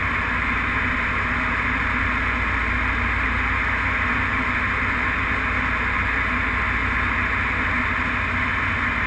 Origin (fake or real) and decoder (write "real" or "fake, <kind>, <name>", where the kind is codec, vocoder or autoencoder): real